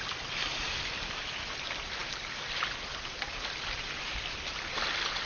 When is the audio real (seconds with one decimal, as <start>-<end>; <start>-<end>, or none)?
0.0-5.3